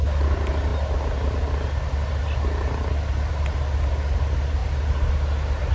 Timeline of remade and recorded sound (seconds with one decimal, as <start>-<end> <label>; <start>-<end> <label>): 0.0-5.7 recorded